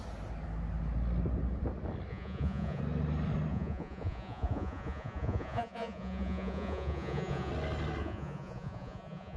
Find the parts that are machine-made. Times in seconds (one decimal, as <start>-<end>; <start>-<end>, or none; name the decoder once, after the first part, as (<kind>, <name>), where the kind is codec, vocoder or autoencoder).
2.1-2.8 (vocoder, Vocos); 3.5-7.5; 8.0-9.4